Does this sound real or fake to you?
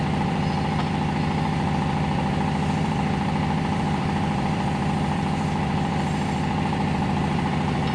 fake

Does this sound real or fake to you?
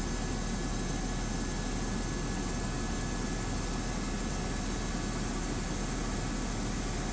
real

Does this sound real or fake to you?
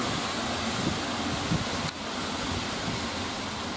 real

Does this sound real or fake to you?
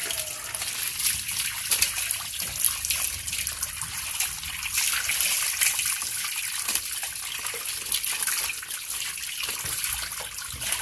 real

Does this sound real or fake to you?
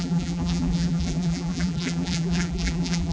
fake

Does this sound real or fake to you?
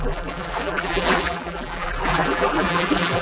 fake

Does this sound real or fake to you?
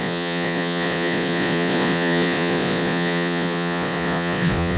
fake